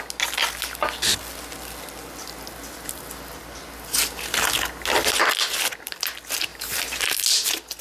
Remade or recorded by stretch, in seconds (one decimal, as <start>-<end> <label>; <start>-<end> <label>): 0.0-6.5 recorded; 6.5-7.1 remade; 7.1-7.8 recorded